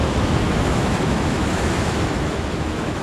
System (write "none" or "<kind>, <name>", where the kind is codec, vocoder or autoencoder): autoencoder, DAC-VAE